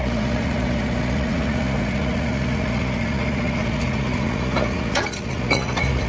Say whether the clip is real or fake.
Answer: fake